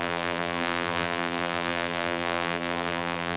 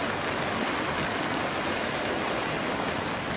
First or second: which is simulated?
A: first